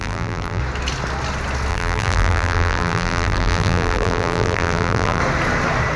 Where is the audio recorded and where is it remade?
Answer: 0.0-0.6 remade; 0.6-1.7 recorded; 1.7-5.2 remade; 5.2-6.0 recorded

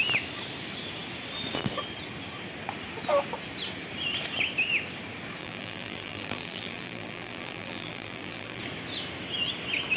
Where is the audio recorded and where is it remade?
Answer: 0.0-5.4 recorded; 5.4-8.6 remade; 8.6-10.0 recorded

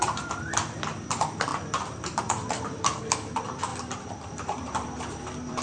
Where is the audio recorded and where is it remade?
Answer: 0.0-3.7 remade; 3.7-4.3 recorded; 4.3-5.6 remade